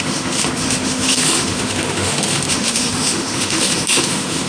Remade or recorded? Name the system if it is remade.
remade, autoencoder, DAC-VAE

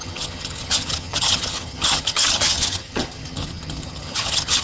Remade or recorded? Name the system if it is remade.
remade, vocoder, HiFi-GAN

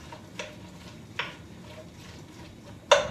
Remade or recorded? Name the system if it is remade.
recorded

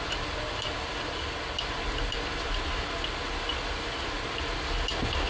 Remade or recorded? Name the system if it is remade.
recorded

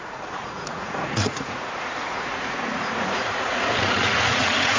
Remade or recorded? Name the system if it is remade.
remade, vocoder, Vocos